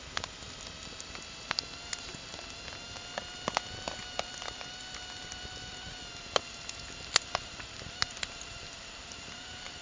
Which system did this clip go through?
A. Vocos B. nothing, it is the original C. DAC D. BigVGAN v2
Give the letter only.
B